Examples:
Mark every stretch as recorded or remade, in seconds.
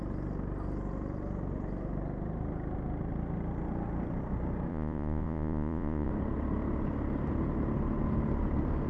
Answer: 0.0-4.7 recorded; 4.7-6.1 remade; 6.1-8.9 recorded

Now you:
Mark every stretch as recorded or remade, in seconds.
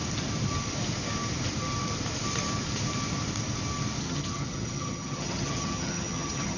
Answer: 0.0-4.0 recorded; 4.0-6.6 remade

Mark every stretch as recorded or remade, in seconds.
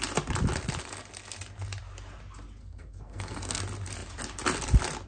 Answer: 0.0-2.6 recorded; 2.6-3.6 remade; 3.6-5.1 recorded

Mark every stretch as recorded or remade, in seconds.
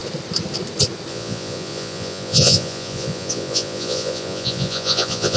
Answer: 0.0-1.1 recorded; 1.1-5.4 remade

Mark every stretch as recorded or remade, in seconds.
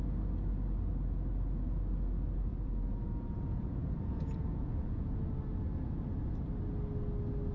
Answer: 0.0-2.5 recorded; 2.5-5.2 remade; 5.2-7.5 recorded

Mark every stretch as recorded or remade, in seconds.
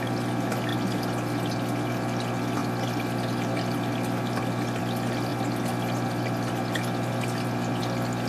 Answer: 0.0-2.6 recorded; 2.6-4.8 remade; 4.8-8.3 recorded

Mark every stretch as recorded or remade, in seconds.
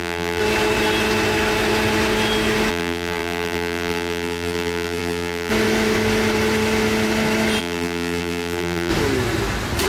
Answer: 0.0-0.4 remade; 0.4-2.7 recorded; 2.7-5.5 remade; 5.5-7.6 recorded; 7.6-8.9 remade; 8.9-9.9 recorded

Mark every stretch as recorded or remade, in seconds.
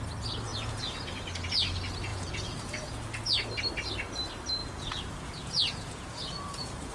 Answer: 0.0-0.5 recorded; 0.5-1.2 remade; 1.2-2.1 recorded; 2.1-3.0 remade; 3.0-4.6 recorded; 4.6-6.9 remade